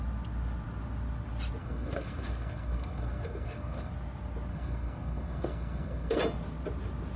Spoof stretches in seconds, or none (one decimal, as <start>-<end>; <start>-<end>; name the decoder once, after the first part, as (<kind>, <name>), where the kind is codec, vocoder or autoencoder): 1.6-3.9 (codec, SNAC); 4.5-6.2